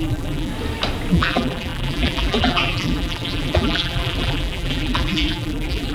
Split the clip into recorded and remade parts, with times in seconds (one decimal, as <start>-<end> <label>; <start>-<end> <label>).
0.0-0.5 remade; 0.5-1.1 recorded; 1.1-5.9 remade